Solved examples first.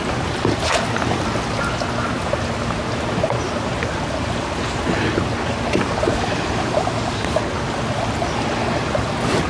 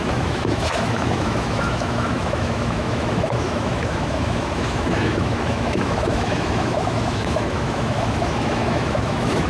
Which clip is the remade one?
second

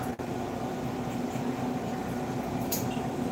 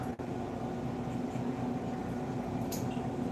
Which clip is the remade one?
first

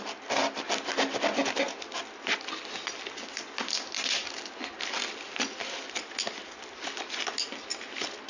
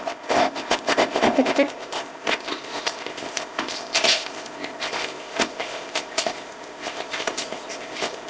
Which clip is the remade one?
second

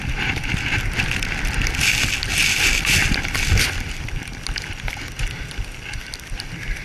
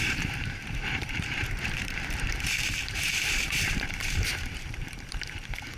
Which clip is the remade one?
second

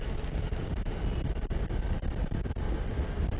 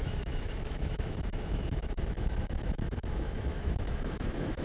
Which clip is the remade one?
second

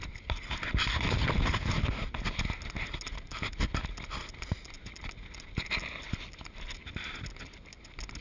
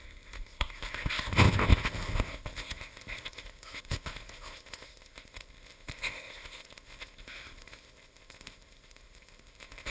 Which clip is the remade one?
second